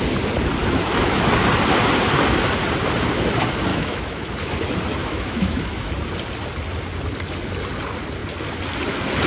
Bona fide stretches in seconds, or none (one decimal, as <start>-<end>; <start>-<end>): 0.0-0.6; 1.3-3.7; 4.3-5.0; 5.9-9.3